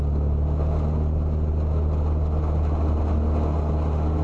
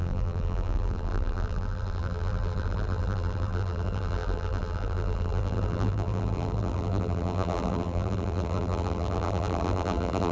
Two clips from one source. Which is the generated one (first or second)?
second